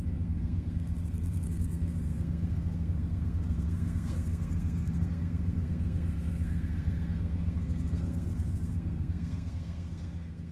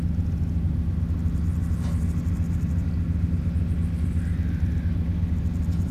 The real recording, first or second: second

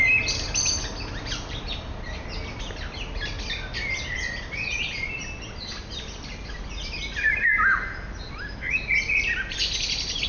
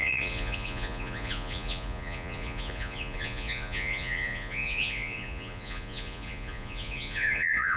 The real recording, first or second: first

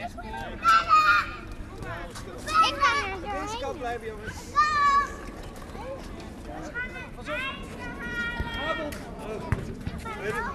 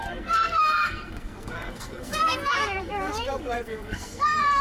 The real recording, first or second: first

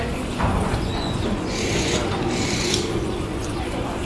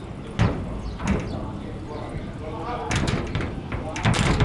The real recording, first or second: second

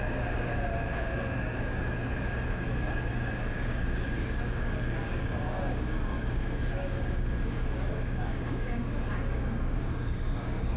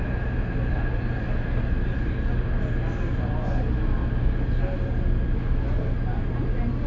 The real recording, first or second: second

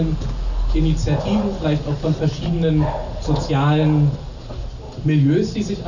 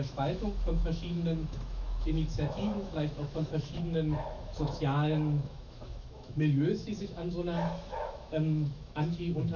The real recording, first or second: first